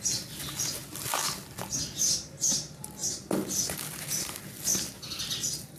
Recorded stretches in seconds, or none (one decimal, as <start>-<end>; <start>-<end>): 0.0-5.8